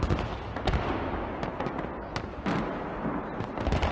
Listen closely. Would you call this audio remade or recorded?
recorded